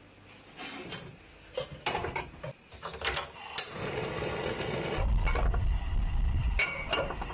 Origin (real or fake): real